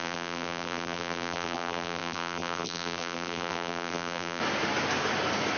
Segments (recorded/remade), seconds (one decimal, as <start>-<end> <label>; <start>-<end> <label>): 0.0-4.4 remade; 4.4-5.6 recorded